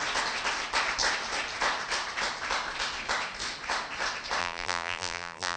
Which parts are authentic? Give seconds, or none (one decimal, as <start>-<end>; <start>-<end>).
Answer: 0.0-4.4